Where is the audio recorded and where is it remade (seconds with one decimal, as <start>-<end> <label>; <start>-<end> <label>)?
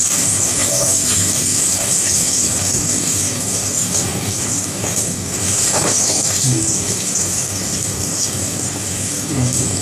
0.0-9.8 remade